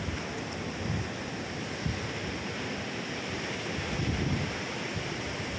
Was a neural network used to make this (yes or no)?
yes